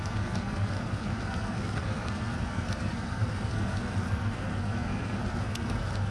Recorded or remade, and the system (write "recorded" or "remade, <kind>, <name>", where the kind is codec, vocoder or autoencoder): remade, codec, SNAC